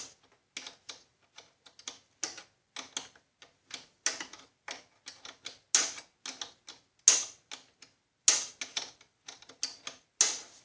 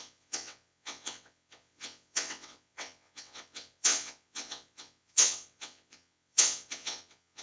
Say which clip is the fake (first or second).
second